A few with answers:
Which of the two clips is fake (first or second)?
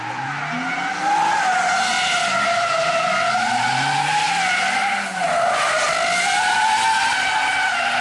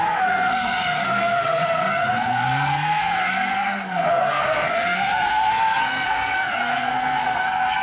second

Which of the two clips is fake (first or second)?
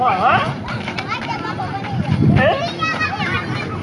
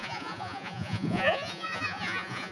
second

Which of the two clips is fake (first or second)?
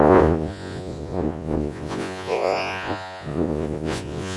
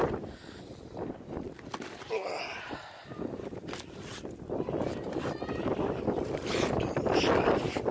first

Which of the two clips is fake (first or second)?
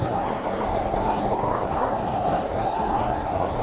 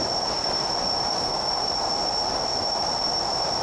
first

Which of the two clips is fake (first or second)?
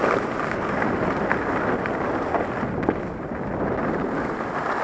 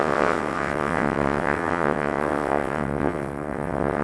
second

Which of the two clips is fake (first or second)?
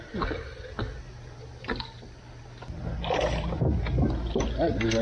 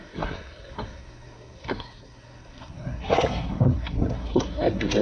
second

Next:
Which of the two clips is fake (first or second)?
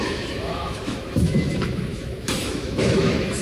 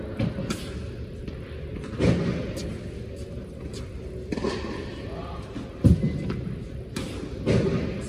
first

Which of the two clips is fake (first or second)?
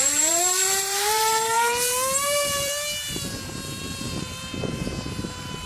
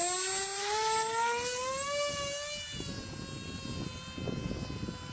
first